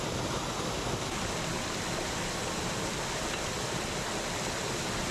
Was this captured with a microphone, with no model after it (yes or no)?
yes